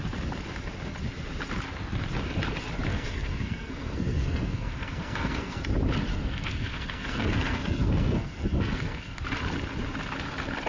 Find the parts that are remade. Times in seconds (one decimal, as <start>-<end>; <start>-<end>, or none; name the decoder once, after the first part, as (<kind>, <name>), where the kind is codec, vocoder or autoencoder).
2.9-5.6 (codec, SNAC); 6.1-9.2